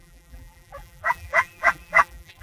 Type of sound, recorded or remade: remade